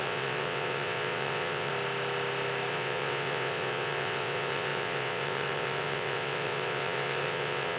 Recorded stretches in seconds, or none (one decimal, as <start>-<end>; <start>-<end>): 1.7-2.7